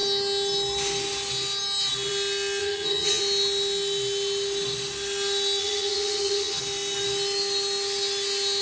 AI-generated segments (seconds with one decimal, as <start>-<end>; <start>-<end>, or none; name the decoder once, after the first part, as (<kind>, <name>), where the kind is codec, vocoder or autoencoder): 2.6-3.2 (vocoder, HiFi-GAN); 5.6-6.6